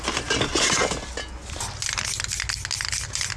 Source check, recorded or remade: recorded